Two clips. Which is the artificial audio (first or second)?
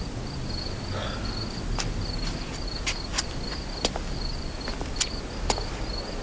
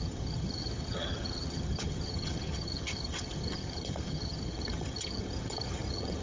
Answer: second